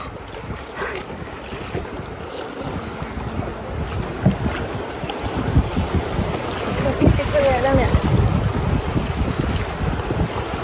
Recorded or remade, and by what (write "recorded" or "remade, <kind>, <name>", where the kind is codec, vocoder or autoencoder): recorded